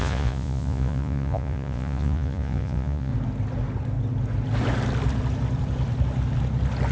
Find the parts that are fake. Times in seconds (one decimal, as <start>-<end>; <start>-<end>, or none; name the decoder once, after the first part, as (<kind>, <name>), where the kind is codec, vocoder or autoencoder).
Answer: 0.0-3.1 (vocoder, Vocos)